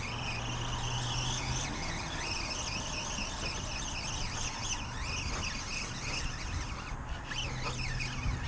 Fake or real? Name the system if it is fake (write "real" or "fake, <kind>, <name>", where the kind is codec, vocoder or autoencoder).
real